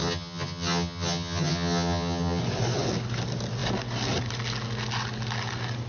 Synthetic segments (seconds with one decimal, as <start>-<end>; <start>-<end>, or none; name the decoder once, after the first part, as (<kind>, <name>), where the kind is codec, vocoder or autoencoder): 0.0-2.4 (vocoder, HiFi-GAN)